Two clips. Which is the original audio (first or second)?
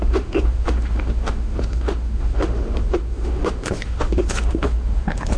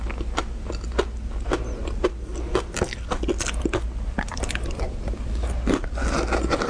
second